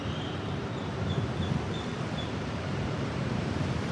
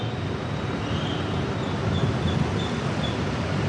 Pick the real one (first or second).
second